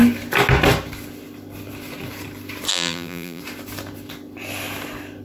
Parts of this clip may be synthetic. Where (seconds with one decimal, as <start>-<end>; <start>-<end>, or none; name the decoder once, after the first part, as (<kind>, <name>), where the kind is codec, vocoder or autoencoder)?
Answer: 2.7-3.4 (vocoder, BigVGAN v2)